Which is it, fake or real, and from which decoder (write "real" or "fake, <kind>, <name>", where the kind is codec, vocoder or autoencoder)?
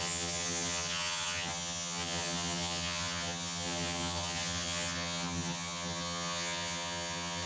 fake, vocoder, HiFi-GAN